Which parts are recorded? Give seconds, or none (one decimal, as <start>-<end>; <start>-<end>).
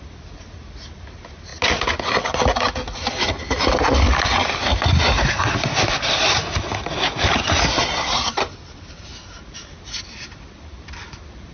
0.0-11.5